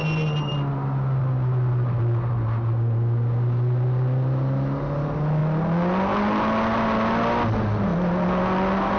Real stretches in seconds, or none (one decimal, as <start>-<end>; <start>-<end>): 0.0-9.0